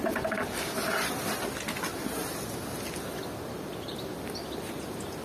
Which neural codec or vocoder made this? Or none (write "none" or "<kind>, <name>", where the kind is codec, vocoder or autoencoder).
none